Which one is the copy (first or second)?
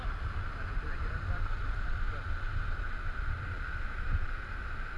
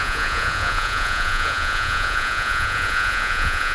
second